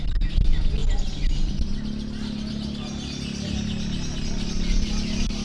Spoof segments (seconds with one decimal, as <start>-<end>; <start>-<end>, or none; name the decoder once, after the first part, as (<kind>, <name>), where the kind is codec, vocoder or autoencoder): none